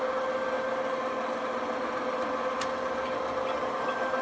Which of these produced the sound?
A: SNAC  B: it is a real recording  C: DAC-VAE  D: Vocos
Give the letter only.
B